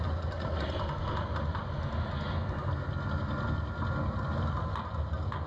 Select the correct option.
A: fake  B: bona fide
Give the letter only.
B